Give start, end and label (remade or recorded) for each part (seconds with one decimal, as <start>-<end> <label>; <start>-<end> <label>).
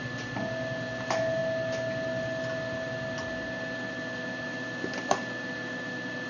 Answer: 0.0-1.4 remade; 1.4-3.9 recorded; 3.9-6.3 remade